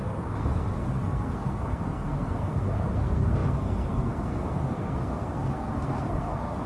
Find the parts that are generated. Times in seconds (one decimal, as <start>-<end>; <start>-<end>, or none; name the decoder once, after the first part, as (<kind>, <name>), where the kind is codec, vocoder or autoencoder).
0.0-6.7 (codec, SNAC)